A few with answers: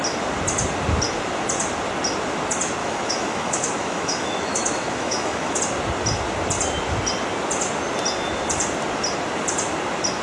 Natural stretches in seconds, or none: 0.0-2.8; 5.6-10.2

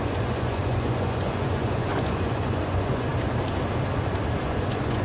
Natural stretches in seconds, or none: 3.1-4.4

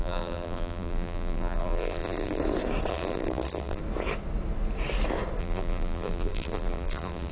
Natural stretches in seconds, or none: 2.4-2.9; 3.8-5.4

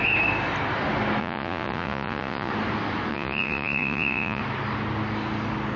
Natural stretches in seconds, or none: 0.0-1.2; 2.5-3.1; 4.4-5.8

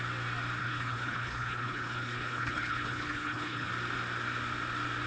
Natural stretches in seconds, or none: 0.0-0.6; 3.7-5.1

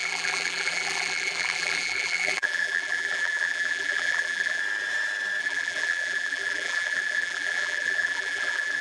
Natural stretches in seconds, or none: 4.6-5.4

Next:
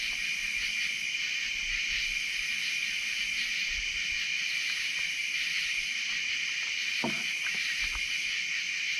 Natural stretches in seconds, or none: 0.0-3.4; 4.1-9.0

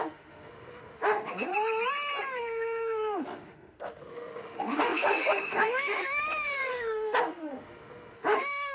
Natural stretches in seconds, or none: 1.5-2.4